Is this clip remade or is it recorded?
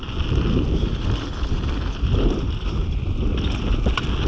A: recorded